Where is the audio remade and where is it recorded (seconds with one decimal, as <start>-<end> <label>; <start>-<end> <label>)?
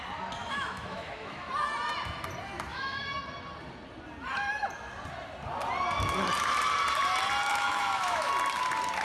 0.0-0.4 recorded; 0.4-1.5 remade; 1.5-2.7 recorded; 2.7-3.2 remade; 3.2-7.5 recorded; 7.5-8.3 remade; 8.3-9.0 recorded